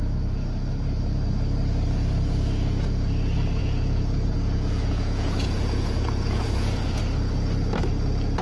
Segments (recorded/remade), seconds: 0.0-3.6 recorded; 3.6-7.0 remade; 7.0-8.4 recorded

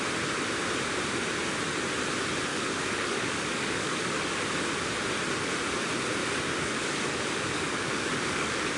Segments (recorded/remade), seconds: 0.0-2.5 recorded; 2.5-4.4 remade; 4.4-6.2 recorded; 6.2-8.8 remade

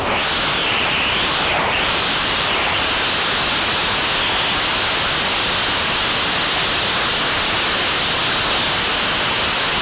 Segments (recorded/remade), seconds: 0.0-0.6 recorded; 0.6-2.9 remade; 2.9-9.8 recorded

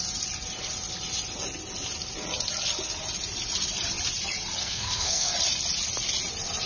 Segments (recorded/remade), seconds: 0.0-4.6 recorded; 4.6-5.3 remade; 5.3-6.7 recorded